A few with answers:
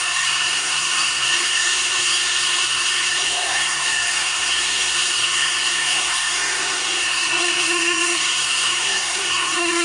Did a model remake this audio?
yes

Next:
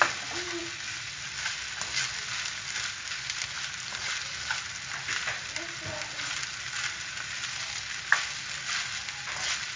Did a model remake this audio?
no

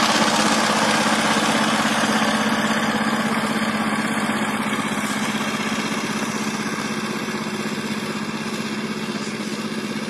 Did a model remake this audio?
no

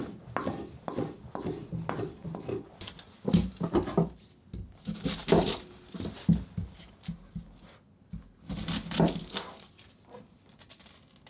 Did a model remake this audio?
no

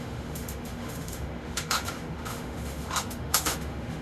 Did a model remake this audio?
yes